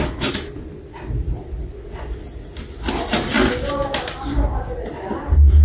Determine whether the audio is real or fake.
real